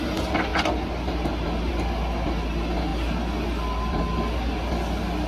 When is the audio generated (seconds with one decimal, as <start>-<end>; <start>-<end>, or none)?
none

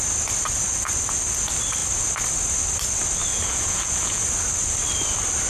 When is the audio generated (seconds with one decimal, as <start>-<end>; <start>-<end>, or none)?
3.3-4.2

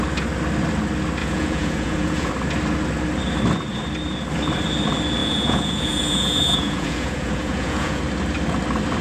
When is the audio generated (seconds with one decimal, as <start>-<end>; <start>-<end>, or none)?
1.2-2.3; 5.2-8.0

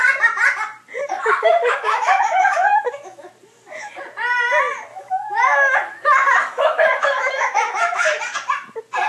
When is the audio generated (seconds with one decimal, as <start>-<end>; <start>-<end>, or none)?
1.4-3.3; 4.9-8.2

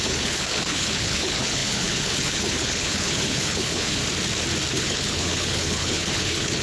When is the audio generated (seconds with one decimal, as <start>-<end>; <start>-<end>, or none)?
0.0-4.0; 4.7-6.6

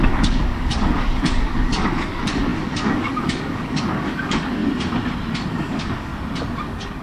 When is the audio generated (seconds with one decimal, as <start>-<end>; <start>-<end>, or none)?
0.0-4.6; 5.5-6.1; 6.6-7.0

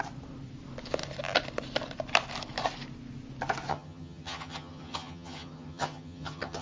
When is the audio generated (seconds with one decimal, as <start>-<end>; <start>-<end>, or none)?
3.7-6.6